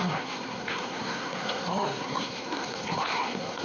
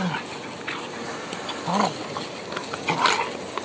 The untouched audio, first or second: second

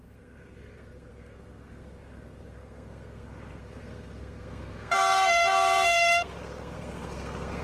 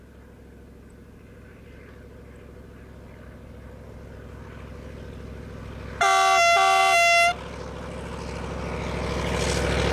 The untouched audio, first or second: second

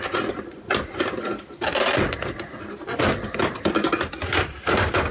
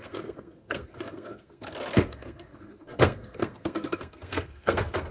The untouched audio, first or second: first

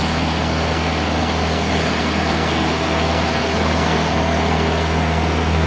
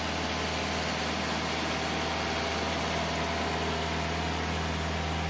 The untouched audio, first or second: second